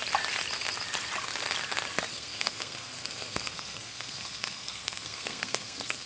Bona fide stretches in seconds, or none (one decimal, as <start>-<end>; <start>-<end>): 0.0-2.1